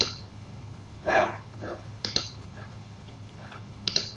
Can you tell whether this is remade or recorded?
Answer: remade